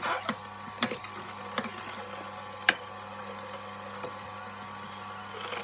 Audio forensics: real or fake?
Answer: real